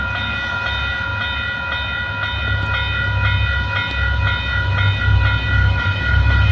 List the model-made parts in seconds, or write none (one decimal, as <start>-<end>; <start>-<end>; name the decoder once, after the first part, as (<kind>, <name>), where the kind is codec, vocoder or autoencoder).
5.6-6.5 (autoencoder, DAC-VAE)